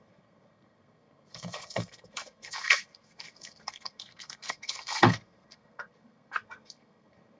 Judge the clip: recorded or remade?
remade